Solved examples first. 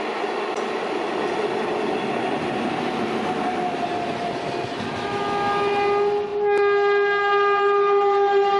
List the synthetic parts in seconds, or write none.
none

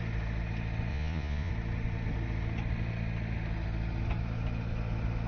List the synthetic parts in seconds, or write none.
0.9-1.5